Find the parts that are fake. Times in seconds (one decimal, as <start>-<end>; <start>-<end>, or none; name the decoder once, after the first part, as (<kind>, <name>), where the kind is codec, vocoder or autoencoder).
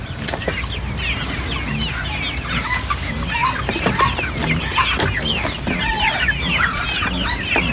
none